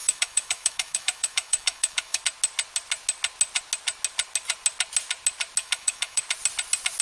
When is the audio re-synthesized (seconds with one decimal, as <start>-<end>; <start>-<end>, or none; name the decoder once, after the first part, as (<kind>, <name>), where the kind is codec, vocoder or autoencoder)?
0.0-2.2 (autoencoder, DAC-VAE); 5.6-6.2